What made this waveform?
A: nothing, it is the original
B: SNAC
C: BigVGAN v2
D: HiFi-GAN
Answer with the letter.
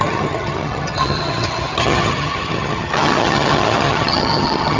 D